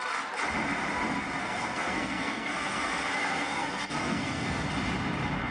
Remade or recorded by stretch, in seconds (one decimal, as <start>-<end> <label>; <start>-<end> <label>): 0.0-1.4 recorded; 1.4-4.7 remade; 4.7-5.5 recorded